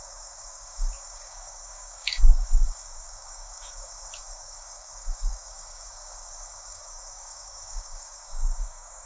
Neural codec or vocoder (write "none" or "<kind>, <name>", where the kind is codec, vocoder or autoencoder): codec, DAC